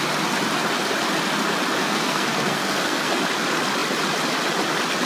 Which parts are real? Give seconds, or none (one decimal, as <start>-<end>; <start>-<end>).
0.0-1.8; 3.2-5.1